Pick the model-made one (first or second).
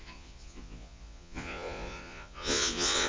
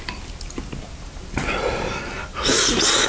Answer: first